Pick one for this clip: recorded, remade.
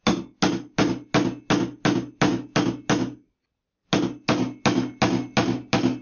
recorded